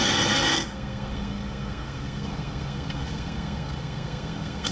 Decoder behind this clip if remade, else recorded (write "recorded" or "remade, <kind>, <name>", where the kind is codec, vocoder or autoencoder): remade, codec, SNAC